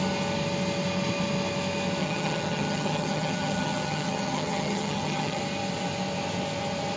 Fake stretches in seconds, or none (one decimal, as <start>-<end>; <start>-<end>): 2.0-5.4